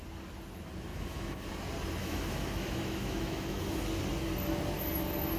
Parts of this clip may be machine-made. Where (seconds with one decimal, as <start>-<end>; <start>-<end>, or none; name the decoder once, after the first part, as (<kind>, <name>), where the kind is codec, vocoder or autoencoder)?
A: 0.9-1.5 (autoencoder, DAC-VAE); 2.0-3.6